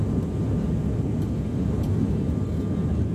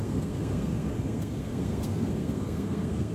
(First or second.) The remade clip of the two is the second